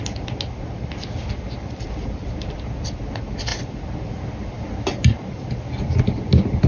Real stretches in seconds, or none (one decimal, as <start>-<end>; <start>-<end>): 0.0-6.7